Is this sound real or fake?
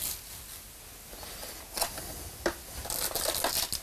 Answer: real